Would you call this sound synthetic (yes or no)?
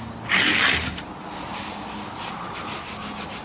no